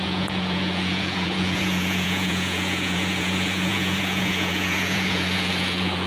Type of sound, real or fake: fake